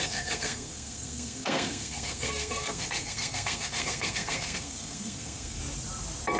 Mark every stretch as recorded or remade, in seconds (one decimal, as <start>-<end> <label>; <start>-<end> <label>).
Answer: 0.0-5.6 remade; 5.6-6.4 recorded